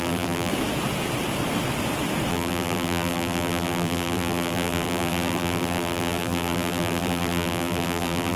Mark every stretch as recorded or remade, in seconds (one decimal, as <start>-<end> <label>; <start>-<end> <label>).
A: 0.0-0.5 remade; 0.5-2.3 recorded; 2.3-8.4 remade